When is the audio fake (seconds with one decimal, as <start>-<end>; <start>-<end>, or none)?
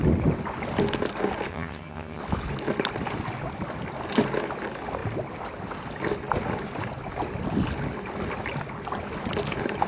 1.5-2.2